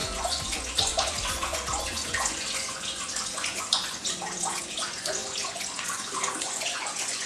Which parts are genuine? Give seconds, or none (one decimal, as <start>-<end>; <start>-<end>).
none